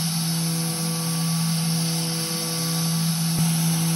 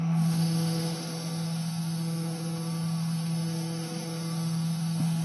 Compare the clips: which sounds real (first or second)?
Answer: first